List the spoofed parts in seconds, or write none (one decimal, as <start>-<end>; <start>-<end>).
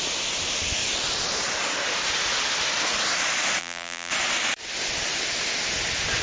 3.6-4.1